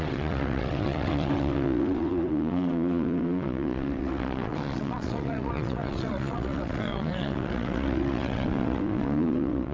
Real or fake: fake